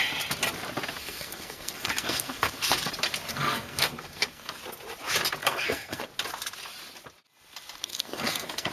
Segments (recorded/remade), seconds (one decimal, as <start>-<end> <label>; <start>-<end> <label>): 0.0-1.0 recorded; 1.0-2.9 remade; 2.9-3.3 recorded; 3.3-4.6 remade; 4.6-5.4 recorded; 5.4-6.1 remade; 6.1-7.9 recorded; 7.9-8.7 remade